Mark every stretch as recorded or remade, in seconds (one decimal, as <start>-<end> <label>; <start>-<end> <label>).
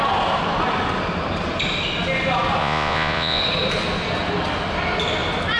0.0-2.6 recorded; 2.6-3.4 remade; 3.4-5.6 recorded